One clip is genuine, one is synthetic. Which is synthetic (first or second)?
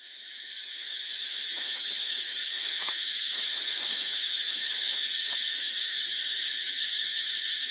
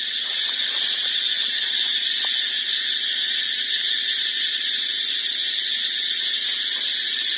first